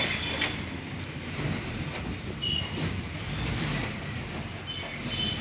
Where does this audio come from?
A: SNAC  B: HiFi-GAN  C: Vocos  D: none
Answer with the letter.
D